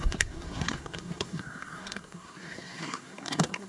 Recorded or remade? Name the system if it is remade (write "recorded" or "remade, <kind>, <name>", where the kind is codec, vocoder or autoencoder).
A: remade, codec, SNAC